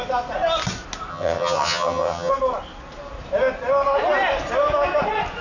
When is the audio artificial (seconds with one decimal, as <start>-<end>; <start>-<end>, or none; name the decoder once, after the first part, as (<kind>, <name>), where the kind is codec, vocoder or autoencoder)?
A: 1.1-2.3 (vocoder, HiFi-GAN)